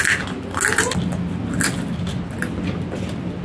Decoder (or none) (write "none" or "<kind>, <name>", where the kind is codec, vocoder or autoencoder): none